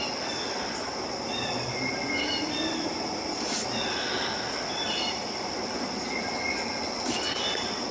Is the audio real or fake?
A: real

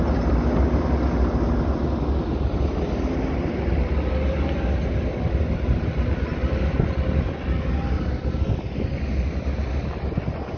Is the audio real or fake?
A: real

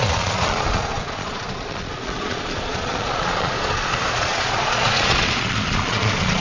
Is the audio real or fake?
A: fake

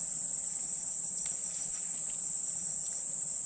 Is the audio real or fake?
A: fake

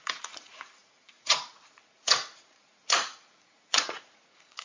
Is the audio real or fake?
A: fake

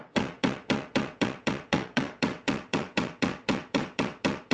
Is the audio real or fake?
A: fake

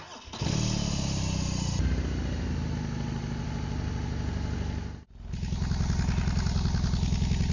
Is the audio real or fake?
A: real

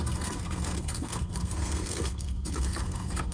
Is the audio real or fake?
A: fake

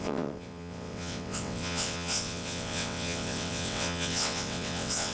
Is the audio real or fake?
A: fake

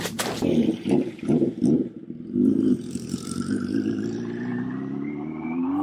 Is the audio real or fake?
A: fake